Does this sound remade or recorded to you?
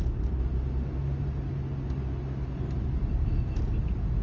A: recorded